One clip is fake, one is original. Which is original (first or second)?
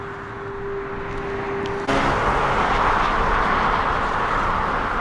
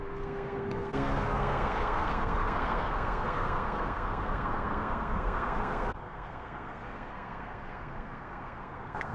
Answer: first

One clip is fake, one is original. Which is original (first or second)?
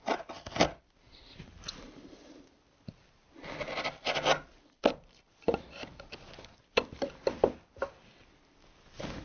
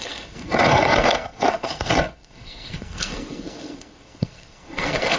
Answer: first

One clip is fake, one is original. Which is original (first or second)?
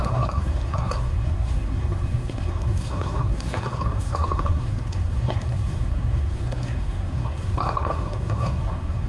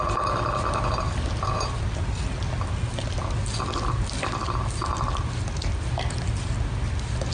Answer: second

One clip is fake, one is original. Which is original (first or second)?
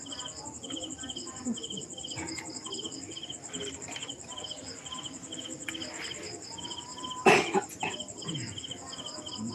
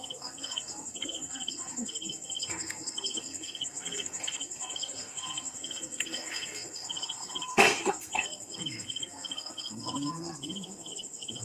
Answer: first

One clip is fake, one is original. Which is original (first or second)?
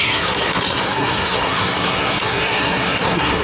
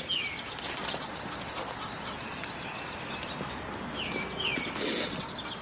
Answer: second